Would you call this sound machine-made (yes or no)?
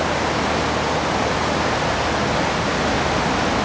no